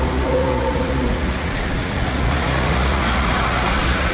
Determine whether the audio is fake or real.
fake